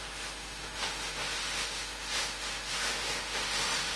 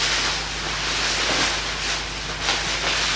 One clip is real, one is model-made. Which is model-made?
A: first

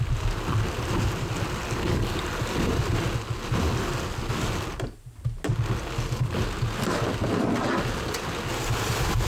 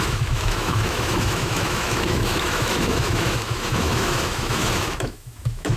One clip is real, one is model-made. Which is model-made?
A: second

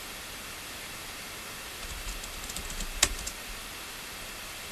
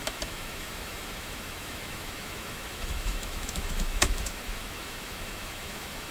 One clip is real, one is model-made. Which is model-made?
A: second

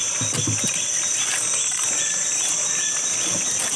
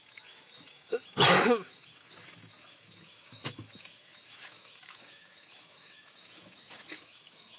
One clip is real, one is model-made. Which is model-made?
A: second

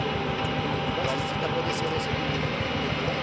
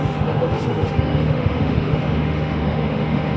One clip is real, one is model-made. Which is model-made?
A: second